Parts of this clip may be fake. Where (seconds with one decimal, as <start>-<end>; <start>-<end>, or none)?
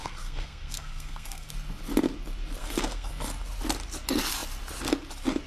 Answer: 0.0-1.5; 2.6-3.1